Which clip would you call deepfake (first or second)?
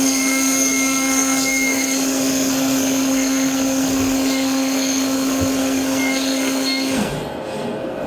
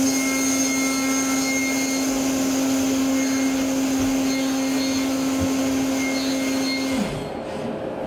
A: first